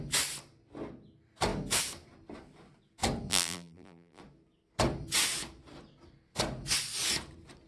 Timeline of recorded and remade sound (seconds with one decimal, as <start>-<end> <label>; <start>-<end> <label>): 0.0-3.3 recorded; 3.3-4.2 remade; 4.2-7.7 recorded